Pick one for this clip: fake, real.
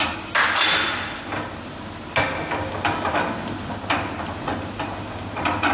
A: real